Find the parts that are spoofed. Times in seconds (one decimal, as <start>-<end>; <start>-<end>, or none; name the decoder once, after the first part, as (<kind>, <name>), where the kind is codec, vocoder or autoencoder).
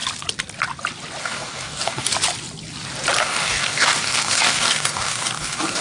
1.2-2.1 (codec, DAC); 3.2-5.8